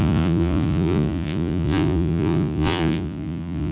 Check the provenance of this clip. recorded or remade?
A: remade